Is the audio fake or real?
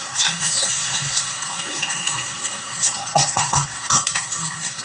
fake